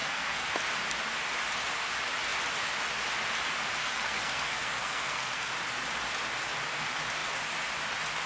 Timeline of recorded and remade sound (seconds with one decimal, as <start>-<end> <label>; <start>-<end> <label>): 0.0-0.5 remade; 0.5-3.8 recorded; 3.8-5.5 remade; 5.5-8.3 recorded